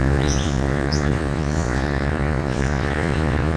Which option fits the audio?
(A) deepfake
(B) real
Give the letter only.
A